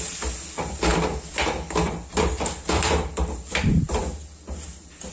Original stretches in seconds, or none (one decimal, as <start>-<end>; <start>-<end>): 0.0-0.9; 4.0-5.1